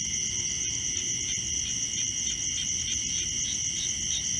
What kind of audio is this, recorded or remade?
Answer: recorded